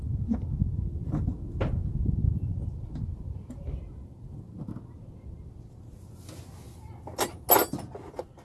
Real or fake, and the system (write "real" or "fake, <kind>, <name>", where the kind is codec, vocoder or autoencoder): real